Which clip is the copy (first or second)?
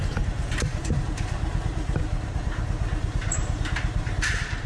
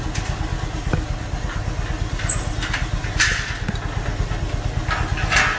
first